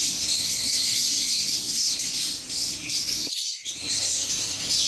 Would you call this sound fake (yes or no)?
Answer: yes